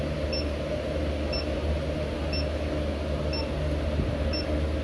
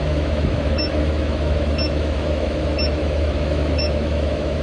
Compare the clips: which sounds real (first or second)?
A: first